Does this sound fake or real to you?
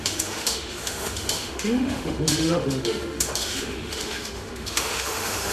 fake